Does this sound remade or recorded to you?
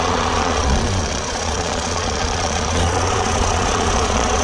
remade